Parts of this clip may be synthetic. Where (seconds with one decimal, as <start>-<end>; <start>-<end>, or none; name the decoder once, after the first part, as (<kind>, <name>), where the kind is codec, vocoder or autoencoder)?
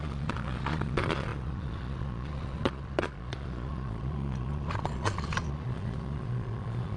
0.0-7.0 (vocoder, Vocos)